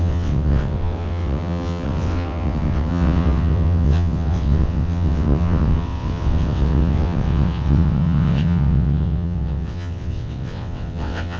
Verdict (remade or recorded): remade